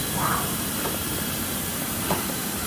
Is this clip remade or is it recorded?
remade